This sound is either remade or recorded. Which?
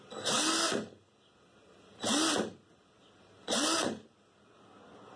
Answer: recorded